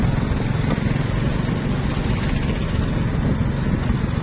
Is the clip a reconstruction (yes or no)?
no